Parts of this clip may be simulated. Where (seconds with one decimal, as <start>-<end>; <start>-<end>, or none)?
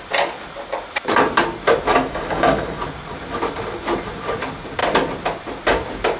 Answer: 1.9-2.8